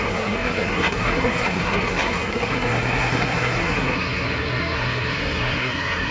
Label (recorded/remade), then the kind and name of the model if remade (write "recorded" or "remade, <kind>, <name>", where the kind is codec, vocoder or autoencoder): remade, codec, SNAC